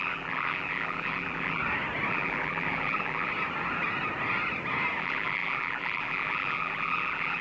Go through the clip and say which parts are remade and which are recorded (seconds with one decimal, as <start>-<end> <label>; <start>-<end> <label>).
0.0-1.6 remade; 1.6-2.1 recorded; 2.1-3.3 remade; 3.3-5.0 recorded; 5.0-7.4 remade